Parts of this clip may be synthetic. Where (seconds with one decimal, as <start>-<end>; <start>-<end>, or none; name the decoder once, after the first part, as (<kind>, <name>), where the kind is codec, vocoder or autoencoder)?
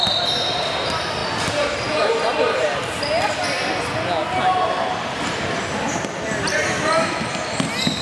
none